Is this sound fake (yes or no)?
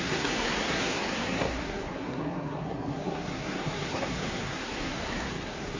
yes